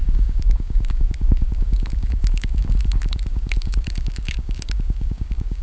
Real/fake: fake